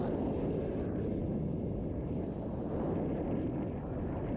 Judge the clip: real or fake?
real